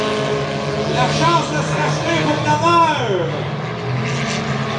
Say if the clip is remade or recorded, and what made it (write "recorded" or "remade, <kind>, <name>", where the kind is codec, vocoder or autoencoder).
recorded